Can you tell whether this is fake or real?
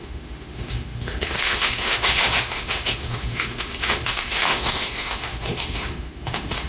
fake